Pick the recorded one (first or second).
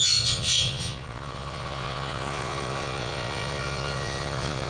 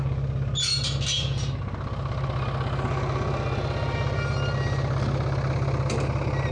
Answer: second